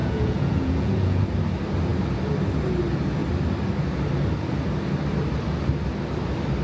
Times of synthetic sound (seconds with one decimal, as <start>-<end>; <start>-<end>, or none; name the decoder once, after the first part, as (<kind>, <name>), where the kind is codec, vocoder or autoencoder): 0.0-1.2 (vocoder, Vocos)